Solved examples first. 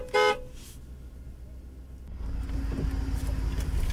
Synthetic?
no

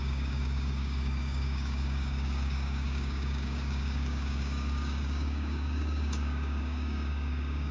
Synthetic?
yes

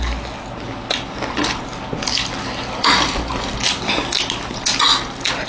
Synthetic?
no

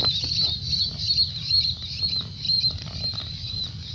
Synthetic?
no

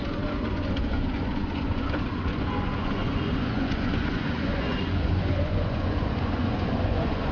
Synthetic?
yes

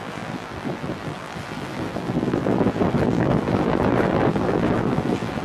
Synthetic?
yes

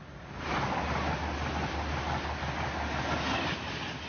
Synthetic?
no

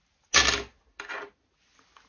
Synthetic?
no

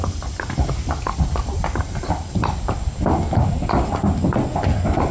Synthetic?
no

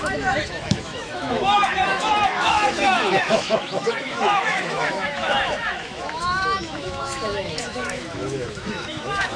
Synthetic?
yes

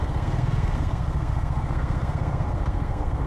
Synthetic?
yes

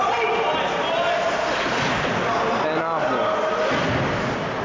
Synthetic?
no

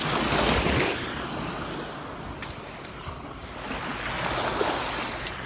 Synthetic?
no